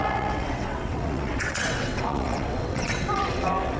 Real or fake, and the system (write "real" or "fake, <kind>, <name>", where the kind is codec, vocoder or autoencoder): fake, vocoder, WaveNeXt